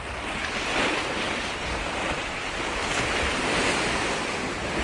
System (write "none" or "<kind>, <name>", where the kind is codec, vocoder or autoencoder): none